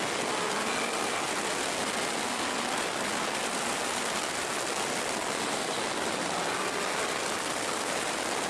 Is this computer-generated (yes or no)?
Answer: no